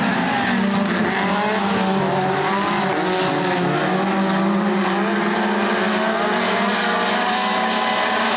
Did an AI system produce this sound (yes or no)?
no